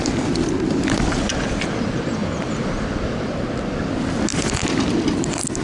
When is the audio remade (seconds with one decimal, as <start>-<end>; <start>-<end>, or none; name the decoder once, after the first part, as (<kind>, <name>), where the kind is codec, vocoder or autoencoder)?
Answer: none